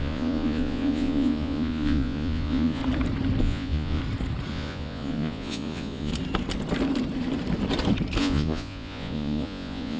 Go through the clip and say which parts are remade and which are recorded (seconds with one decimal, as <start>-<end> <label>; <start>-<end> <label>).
0.0-2.8 remade; 2.8-3.4 recorded; 3.4-4.0 remade; 4.0-4.5 recorded; 4.5-6.1 remade; 6.1-8.2 recorded; 8.2-10.0 remade